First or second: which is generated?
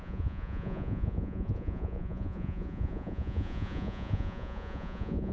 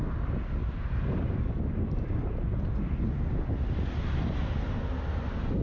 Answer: first